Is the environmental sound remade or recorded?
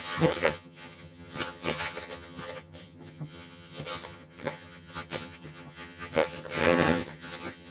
remade